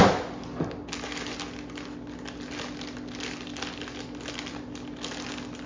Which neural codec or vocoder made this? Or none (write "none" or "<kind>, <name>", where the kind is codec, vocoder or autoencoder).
none